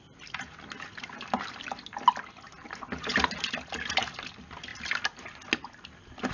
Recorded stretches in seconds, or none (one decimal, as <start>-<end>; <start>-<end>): 0.0-6.3